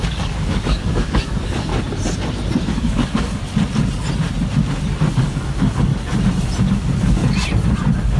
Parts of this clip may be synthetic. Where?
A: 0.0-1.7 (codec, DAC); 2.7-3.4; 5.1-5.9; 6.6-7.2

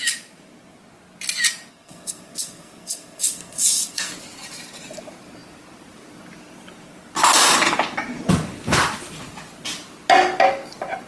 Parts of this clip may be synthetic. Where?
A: 1.7-4.1 (codec, SNAC)